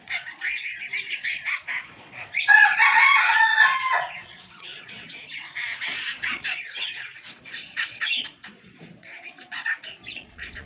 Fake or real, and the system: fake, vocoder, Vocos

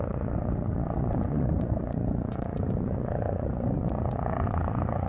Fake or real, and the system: fake, vocoder, Vocos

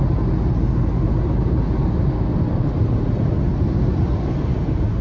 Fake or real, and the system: real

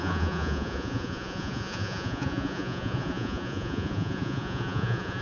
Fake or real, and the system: fake, vocoder, Vocos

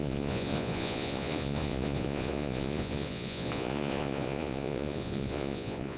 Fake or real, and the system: fake, vocoder, Vocos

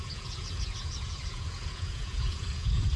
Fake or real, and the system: fake, vocoder, Vocos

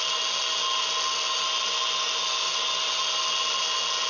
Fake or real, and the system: real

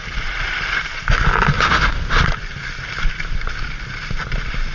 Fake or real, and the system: real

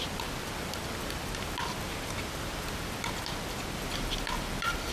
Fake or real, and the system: real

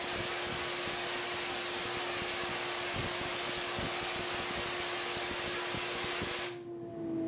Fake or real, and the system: real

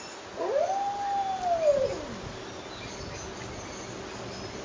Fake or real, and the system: real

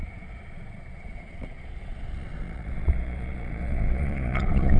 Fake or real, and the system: fake, vocoder, Vocos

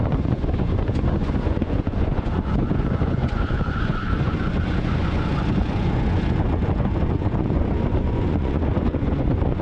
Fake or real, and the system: fake, vocoder, Vocos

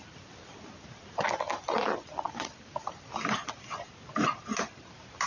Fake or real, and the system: real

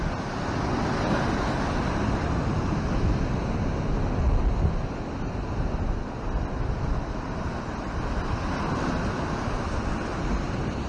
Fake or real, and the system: real